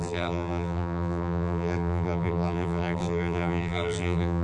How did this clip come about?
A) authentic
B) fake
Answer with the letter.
B